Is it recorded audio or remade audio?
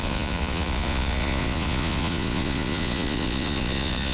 remade